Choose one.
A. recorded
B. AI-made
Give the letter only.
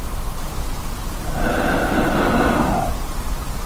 A